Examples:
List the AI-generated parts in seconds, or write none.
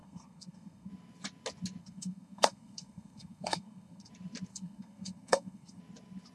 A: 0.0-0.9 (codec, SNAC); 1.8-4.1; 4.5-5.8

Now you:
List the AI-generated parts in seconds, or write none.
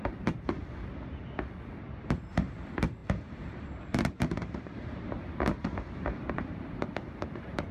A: 0.0-0.6 (vocoder, BigVGAN v2); 1.7-7.7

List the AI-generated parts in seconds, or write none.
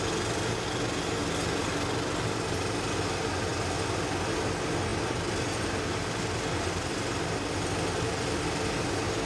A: none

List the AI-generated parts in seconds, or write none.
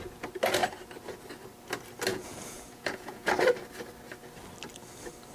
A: 2.1-3.3 (vocoder, Vocos)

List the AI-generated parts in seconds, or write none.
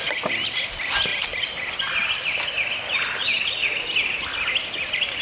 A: none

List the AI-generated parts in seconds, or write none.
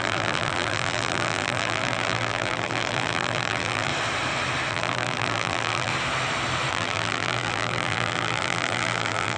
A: 0.0-3.9 (vocoder, BigVGAN v2); 4.7-5.9; 6.7-9.4